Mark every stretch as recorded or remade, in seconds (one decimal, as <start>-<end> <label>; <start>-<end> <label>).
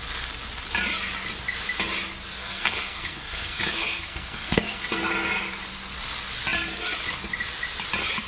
0.0-2.4 recorded; 2.4-5.1 remade; 5.1-8.3 recorded